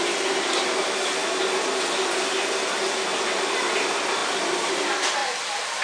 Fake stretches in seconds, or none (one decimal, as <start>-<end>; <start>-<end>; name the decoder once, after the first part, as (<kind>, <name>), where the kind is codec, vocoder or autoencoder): none